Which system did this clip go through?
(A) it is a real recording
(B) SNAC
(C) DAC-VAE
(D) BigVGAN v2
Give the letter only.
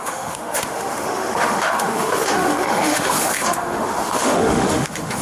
C